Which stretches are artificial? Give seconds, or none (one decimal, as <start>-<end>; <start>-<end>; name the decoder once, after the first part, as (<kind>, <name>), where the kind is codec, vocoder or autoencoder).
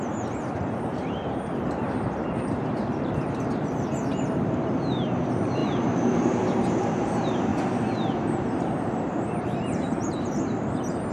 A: 0.0-7.5 (vocoder, BigVGAN v2); 8.4-11.1